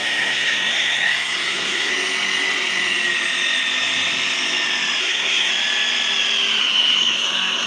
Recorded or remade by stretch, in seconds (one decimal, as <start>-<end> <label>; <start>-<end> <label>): 0.0-1.9 remade; 1.9-5.0 recorded; 5.0-5.5 remade; 5.5-6.6 recorded; 6.6-7.7 remade